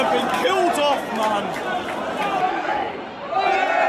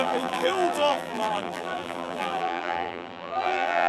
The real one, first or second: first